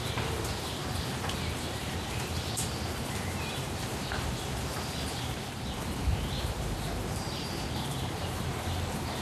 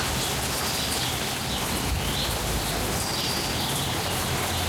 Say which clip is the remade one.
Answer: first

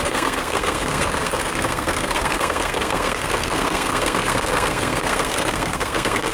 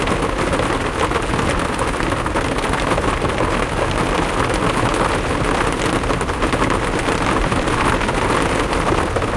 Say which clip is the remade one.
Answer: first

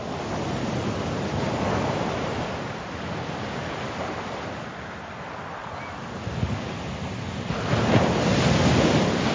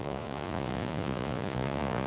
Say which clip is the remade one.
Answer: second